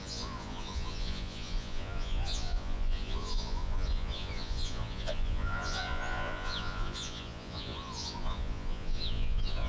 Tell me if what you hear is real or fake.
fake